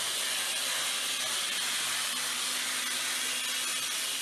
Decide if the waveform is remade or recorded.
recorded